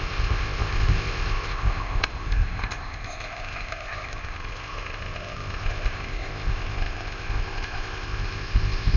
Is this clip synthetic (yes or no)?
yes